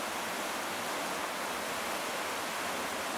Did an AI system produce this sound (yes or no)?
no